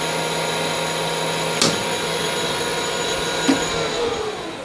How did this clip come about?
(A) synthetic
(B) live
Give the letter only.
B